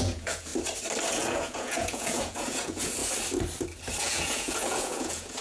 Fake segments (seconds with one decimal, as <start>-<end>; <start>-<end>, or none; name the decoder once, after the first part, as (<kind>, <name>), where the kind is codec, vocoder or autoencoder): 0.0-0.5 (vocoder, Vocos); 1.1-3.0; 4.0-5.4